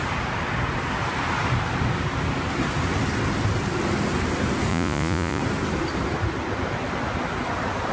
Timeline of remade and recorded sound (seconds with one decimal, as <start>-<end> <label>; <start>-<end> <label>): 0.0-4.7 recorded; 4.7-5.4 remade; 5.4-7.9 recorded